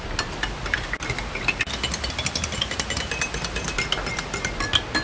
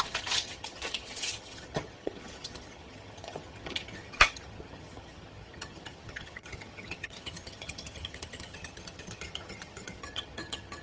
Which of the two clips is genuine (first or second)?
first